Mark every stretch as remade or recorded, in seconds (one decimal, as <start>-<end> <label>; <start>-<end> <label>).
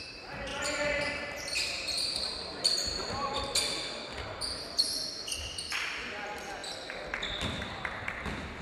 0.0-0.5 recorded; 0.5-3.4 remade; 3.4-8.6 recorded